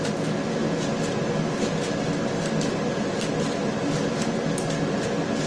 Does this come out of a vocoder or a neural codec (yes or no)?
no